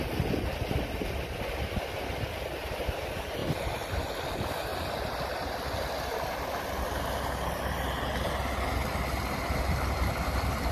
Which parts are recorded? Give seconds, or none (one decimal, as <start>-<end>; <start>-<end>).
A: 0.0-3.4; 4.0-4.7; 5.6-10.7